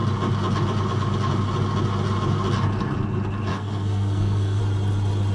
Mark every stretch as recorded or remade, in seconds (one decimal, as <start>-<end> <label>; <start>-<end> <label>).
0.0-3.5 recorded; 3.5-4.6 remade; 4.6-5.3 recorded